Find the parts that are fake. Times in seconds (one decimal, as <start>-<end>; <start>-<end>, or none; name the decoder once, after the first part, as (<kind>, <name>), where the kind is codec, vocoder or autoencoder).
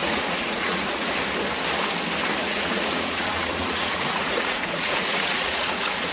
0.0-1.1 (vocoder, Vocos); 2.4-6.1